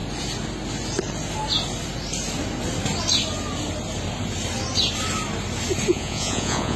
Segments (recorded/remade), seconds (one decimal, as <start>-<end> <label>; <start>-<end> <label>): 0.0-5.9 recorded; 5.9-6.8 remade